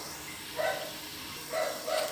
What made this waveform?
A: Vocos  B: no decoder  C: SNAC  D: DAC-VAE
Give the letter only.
B